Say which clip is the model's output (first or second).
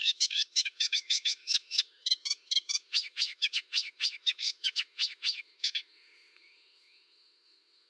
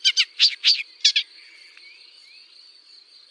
first